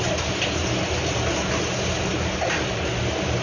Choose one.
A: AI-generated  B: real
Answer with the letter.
B